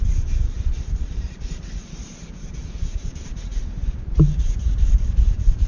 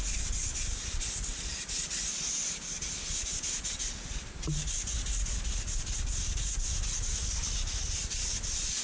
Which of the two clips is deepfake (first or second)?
first